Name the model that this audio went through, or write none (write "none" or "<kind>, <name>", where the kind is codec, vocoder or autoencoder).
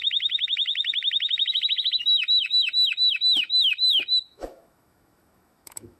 autoencoder, DAC-VAE